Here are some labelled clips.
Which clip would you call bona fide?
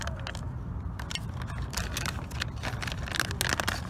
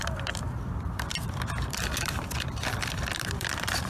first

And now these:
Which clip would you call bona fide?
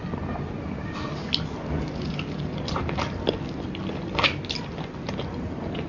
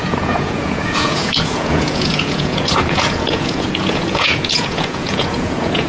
first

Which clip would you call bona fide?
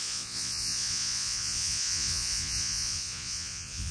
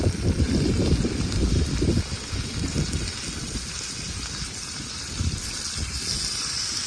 second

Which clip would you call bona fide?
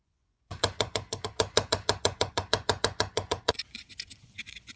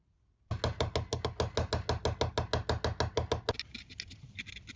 second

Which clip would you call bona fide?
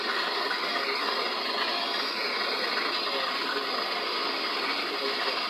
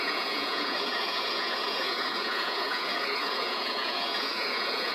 first